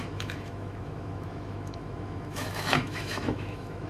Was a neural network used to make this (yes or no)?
yes